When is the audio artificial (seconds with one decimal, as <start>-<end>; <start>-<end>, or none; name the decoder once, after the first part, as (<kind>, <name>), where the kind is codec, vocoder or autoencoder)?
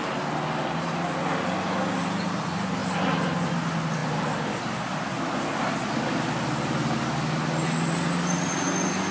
none